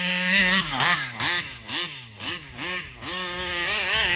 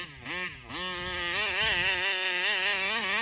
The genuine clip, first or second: second